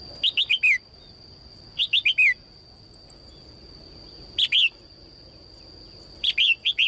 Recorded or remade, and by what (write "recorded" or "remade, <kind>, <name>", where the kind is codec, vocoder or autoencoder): recorded